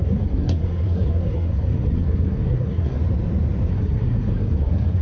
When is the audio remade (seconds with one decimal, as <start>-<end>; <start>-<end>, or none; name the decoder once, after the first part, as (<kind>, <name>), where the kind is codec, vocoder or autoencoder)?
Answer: 0.0-3.0 (codec, SNAC); 3.7-5.0